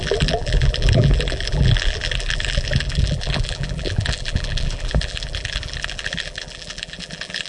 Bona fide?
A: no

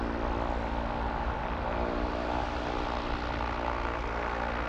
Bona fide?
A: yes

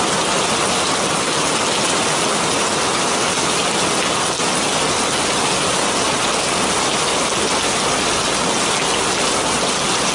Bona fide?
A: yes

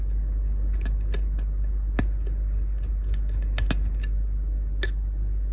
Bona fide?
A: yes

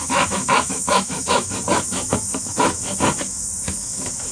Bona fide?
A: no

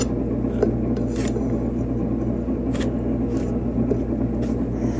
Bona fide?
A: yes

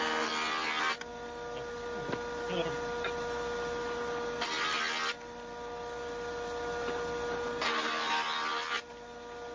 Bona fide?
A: yes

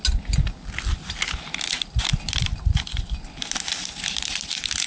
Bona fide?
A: yes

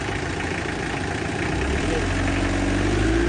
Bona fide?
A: yes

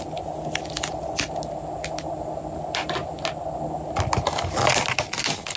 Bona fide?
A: yes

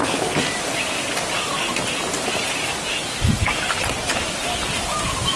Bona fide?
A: yes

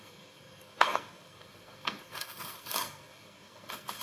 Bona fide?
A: no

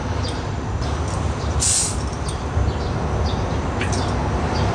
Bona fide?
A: yes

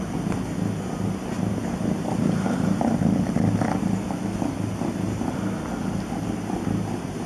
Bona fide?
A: no